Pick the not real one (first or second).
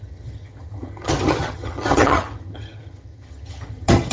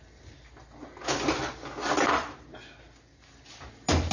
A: first